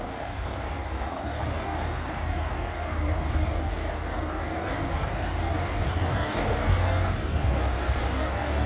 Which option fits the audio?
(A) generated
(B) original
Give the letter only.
A